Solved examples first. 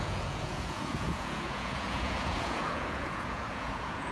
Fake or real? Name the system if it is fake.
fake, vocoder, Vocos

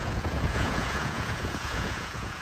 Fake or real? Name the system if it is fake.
fake, vocoder, Vocos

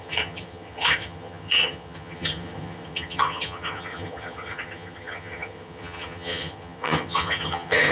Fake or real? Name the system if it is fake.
fake, vocoder, HiFi-GAN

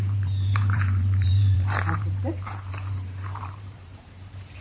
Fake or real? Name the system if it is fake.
fake, vocoder, BigVGAN v2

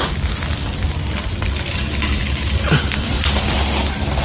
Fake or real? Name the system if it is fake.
real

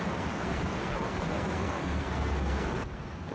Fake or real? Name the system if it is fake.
fake, codec, SNAC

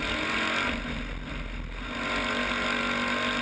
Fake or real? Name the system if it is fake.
real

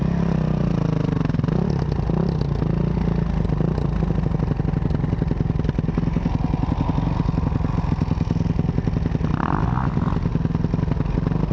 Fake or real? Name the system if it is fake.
real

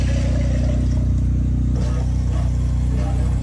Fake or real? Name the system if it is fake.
real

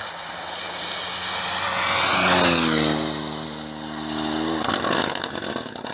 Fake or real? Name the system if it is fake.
real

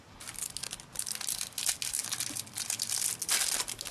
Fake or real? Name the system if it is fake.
real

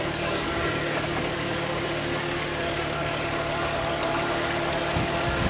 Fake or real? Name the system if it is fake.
fake, codec, DAC